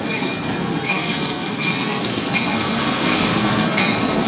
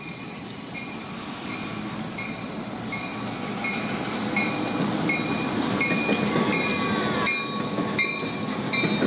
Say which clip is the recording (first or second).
second